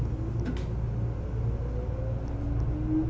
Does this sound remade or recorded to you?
recorded